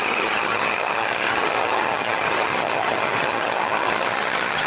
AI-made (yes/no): yes